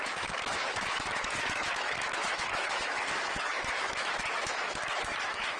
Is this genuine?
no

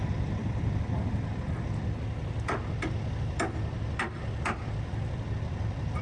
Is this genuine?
yes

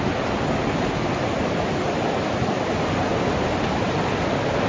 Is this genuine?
yes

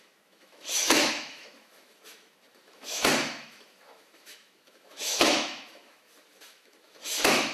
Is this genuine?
no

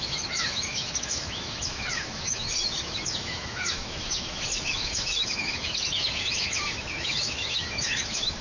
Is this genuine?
no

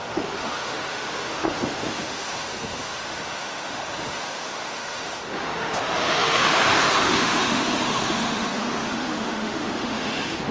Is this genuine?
no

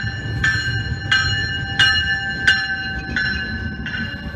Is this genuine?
yes